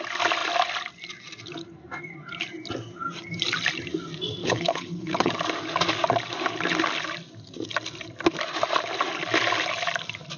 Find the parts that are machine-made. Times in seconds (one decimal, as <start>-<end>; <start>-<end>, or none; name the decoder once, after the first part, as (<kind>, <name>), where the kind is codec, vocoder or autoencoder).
4.4-5.3 (codec, HILCodec)